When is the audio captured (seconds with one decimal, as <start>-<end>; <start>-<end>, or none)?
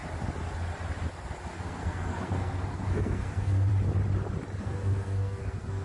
0.0-1.6; 3.7-4.6